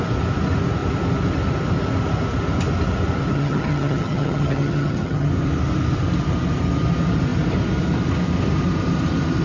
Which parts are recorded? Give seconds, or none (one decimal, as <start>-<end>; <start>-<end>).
0.0-3.3; 5.3-9.4